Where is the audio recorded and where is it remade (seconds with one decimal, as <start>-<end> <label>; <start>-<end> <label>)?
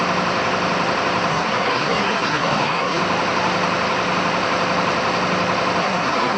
0.0-1.3 recorded; 1.3-3.0 remade; 3.0-5.8 recorded; 5.8-6.4 remade